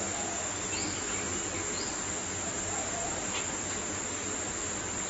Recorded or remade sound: remade